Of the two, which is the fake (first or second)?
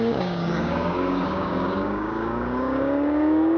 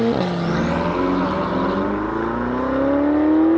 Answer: first